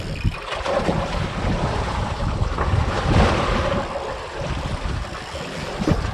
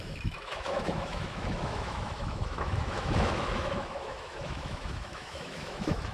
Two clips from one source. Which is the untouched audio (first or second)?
first